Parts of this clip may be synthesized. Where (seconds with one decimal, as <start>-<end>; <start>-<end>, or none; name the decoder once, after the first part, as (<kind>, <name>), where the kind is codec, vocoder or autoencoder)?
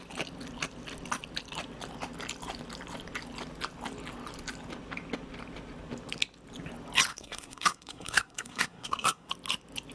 7.1-9.3 (codec, SNAC)